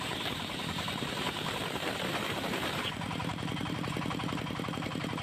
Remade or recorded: remade